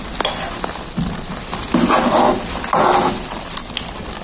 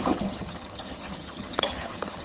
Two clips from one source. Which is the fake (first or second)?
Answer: second